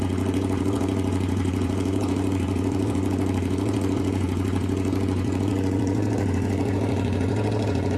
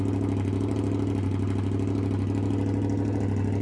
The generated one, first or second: first